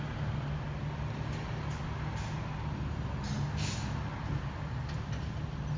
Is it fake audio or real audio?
real